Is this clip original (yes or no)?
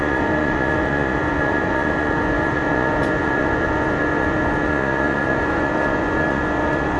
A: no